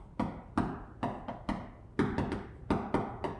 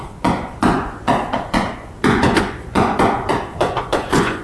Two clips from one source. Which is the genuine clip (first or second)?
first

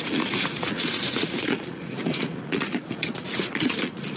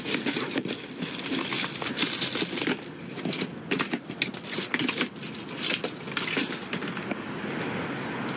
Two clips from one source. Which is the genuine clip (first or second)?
second